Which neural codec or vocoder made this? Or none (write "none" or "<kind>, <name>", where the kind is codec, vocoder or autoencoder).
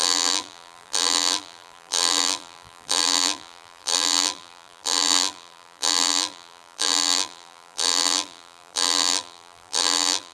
vocoder, BigVGAN v2